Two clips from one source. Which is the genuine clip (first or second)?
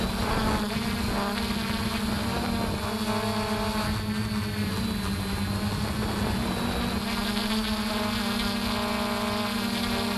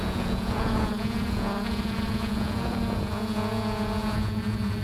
first